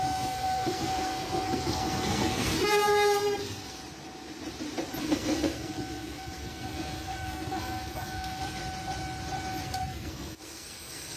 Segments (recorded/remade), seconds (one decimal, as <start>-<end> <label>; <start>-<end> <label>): 0.0-3.8 remade; 3.8-5.0 recorded; 5.0-8.6 remade; 8.6-9.6 recorded; 9.6-11.2 remade